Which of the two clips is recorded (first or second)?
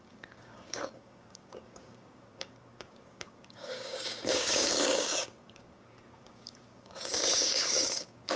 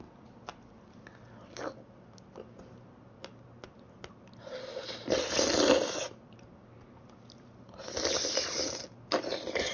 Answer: second